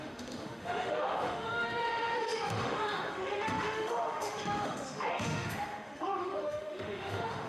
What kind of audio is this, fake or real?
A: fake